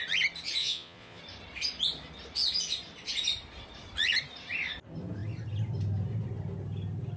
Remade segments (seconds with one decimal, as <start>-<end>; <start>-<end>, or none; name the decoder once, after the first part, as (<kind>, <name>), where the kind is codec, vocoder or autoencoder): 0.6-1.2 (vocoder, Vocos)